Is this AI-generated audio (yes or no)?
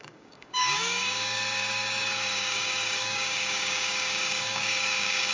yes